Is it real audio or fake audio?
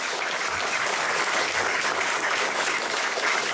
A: fake